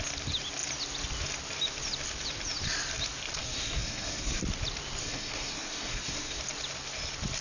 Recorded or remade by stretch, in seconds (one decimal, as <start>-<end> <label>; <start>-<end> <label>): 0.0-3.4 recorded; 3.4-4.4 remade; 4.4-5.0 recorded; 5.0-6.4 remade; 6.4-7.4 recorded